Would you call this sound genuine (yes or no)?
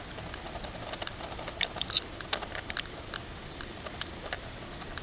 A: yes